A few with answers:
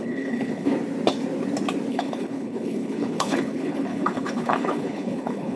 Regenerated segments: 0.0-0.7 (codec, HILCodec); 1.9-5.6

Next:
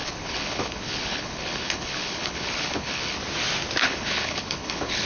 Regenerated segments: 0.0-3.2 (codec, HILCodec); 3.8-5.1

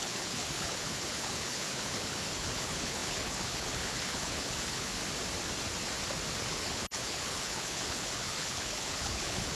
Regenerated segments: 0.0-5.0 (codec, HILCodec); 6.4-9.5

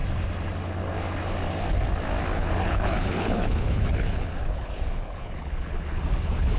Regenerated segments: 2.4-6.6 (codec, HILCodec)

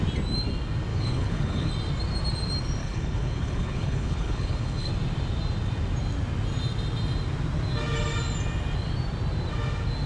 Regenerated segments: 0.9-1.7 (codec, HILCodec); 2.8-4.9

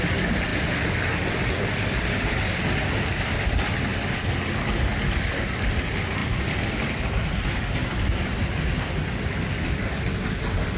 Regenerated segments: none

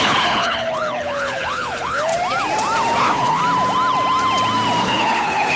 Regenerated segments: 0.0-2.1 (codec, HILCodec); 3.0-3.4; 4.8-5.6